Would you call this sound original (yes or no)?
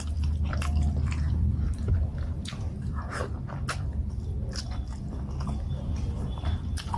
no